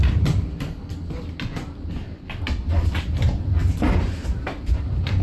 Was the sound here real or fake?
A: real